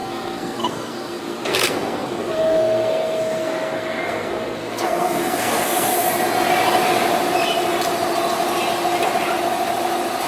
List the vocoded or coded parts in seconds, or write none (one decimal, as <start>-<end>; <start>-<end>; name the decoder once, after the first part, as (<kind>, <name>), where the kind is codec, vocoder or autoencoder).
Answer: 0.0-6.0 (codec, SNAC)